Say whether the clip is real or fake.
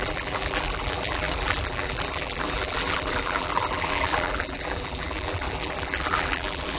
fake